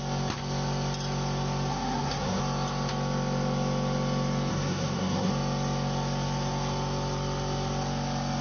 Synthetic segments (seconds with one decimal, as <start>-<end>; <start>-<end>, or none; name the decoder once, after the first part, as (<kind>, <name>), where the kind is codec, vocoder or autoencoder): 1.7-2.4 (codec, SNAC); 4.5-5.3